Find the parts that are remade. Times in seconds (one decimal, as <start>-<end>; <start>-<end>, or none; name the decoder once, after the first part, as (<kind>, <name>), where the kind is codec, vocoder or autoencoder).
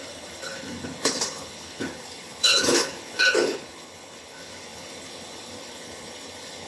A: 0.0-6.7 (codec, HILCodec)